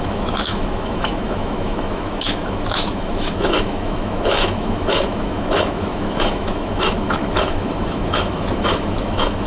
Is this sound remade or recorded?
remade